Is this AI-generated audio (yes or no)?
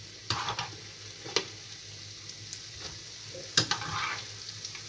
no